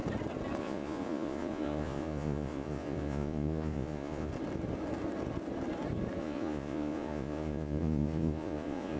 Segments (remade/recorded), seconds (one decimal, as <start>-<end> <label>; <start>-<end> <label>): 0.0-0.6 recorded; 0.6-4.3 remade; 4.3-6.2 recorded; 6.2-9.0 remade